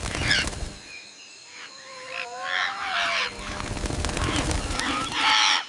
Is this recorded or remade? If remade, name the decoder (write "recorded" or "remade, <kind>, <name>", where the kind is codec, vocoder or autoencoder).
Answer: recorded